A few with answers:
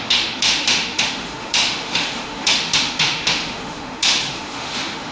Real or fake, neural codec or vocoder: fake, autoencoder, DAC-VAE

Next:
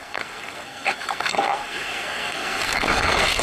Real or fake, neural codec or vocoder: fake, codec, SNAC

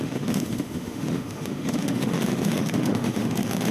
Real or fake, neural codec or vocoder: fake, autoencoder, DAC-VAE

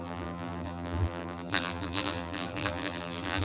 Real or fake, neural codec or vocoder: fake, vocoder, BigVGAN v2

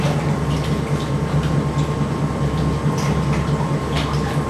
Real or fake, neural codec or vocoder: real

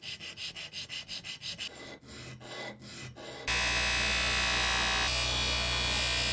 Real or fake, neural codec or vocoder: real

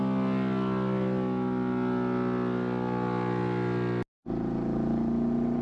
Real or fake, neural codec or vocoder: real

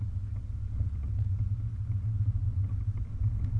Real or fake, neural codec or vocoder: real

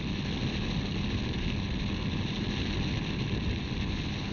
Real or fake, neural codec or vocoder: real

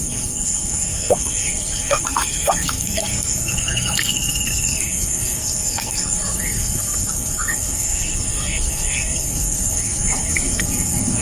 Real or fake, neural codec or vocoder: fake, codec, SNAC